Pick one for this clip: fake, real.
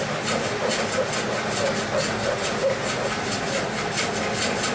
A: real